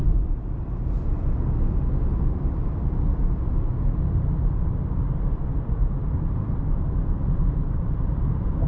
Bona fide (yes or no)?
no